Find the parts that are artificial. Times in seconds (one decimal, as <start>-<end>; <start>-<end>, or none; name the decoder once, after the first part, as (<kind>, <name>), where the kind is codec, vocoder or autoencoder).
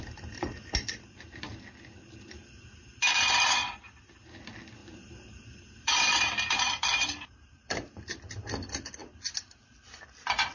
3.6-4.1 (vocoder, BigVGAN v2); 4.8-8.0